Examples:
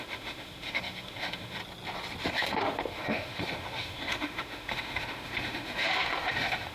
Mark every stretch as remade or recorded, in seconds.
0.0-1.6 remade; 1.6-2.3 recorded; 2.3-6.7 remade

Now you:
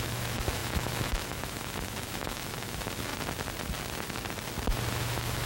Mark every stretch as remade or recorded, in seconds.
0.0-3.1 remade; 3.1-4.9 recorded; 4.9-5.5 remade

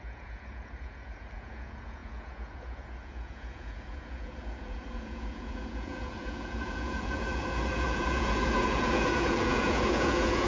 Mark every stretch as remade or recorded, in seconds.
0.0-10.5 remade

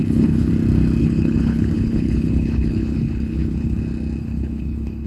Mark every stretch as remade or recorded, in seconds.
0.0-0.5 remade; 0.5-1.0 recorded; 1.0-3.8 remade; 3.8-4.2 recorded; 4.2-5.1 remade